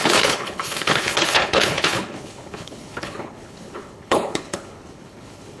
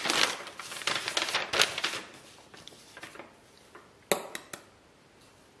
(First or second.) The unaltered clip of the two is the second